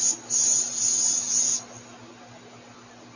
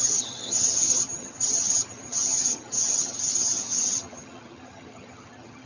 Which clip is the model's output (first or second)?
second